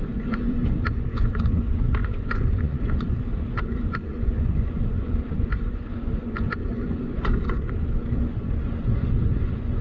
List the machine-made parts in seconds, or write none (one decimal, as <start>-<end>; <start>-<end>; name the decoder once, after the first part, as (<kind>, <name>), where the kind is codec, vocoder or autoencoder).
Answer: 0.0-9.8 (vocoder, Vocos)